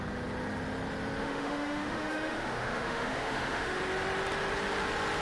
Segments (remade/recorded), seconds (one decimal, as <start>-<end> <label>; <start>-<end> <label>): 0.0-1.2 recorded; 1.2-3.8 remade; 3.8-5.2 recorded